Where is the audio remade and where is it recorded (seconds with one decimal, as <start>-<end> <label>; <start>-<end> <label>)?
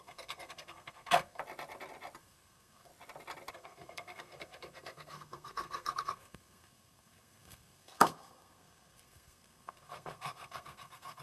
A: 0.0-1.4 remade; 1.4-2.2 recorded; 2.2-2.9 remade; 2.9-3.5 recorded; 3.5-11.2 remade